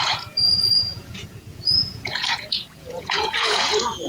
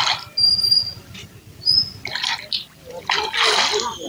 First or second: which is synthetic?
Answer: first